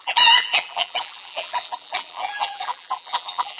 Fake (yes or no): yes